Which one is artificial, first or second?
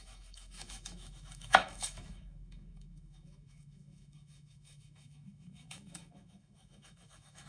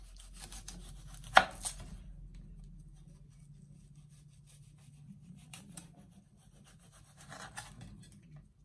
first